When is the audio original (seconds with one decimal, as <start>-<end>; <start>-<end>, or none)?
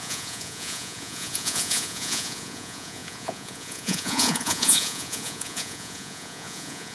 none